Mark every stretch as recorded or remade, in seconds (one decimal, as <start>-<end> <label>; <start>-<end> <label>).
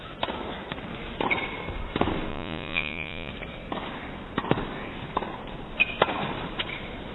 0.0-2.3 recorded; 2.3-3.3 remade; 3.3-7.1 recorded